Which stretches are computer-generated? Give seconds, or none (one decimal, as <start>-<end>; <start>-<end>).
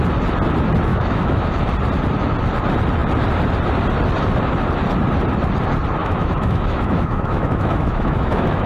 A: 0.9-1.6; 6.0-8.7